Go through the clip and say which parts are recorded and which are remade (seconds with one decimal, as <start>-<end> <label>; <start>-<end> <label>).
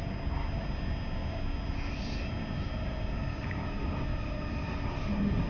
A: 0.0-5.5 recorded